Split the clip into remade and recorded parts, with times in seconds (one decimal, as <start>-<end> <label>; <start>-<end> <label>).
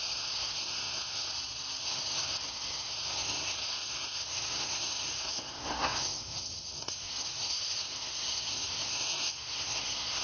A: 0.0-1.3 remade; 1.3-1.8 recorded; 1.8-10.2 remade